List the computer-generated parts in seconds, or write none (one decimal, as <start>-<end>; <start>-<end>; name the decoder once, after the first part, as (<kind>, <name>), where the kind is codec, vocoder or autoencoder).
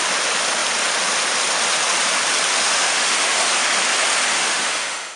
2.5-3.5 (autoencoder, DAC-VAE); 4.3-5.2